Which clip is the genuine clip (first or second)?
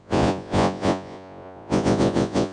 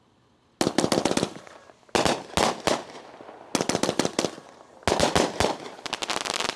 second